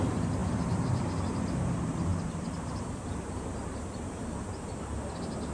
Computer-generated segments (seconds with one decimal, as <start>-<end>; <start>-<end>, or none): 0.4-1.7; 2.1-4.2